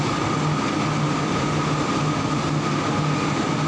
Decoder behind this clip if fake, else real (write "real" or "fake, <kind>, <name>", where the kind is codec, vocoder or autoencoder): real